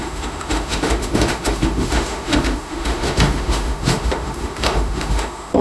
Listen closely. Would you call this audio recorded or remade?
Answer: remade